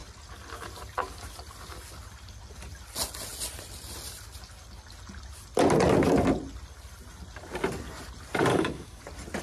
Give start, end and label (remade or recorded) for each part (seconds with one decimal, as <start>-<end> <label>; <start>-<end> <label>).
0.0-8.5 recorded; 8.5-9.0 remade; 9.0-9.4 recorded